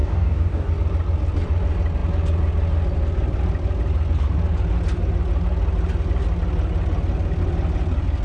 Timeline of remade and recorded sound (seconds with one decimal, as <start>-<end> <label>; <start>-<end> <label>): 0.0-0.7 remade; 0.7-8.2 recorded